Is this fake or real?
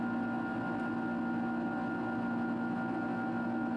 real